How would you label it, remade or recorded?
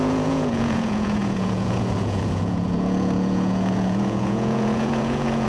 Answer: remade